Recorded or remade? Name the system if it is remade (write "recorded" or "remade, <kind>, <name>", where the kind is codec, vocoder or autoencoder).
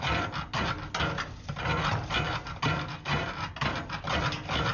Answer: recorded